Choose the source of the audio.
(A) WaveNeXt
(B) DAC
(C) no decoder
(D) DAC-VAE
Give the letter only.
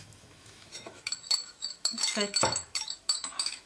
D